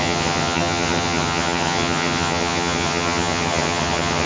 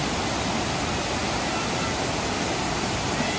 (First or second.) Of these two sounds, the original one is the second